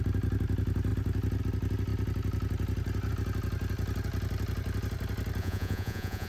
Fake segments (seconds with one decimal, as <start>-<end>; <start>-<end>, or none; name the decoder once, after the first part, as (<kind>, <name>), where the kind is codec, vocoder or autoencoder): 5.4-6.3 (vocoder, Vocos)